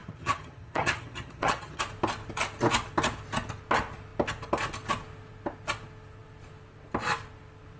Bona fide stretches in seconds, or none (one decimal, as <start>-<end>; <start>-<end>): 1.8-7.8